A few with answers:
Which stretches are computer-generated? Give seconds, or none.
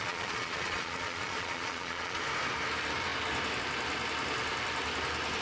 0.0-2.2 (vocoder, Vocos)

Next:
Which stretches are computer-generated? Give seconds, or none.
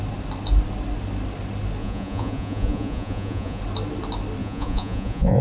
1.8-3.6 (vocoder, Vocos); 4.4-5.4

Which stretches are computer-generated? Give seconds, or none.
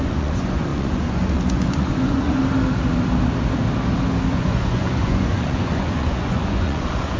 0.0-2.4 (vocoder, Vocos); 4.3-7.2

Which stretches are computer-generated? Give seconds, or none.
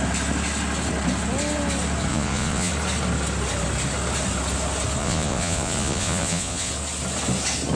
2.1-2.7 (vocoder, Vocos); 5.0-6.7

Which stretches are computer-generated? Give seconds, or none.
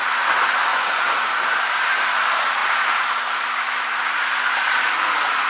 0.7-1.3 (vocoder, Vocos)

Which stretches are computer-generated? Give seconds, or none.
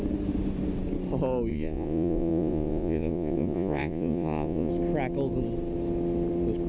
1.5-4.7 (vocoder, Vocos)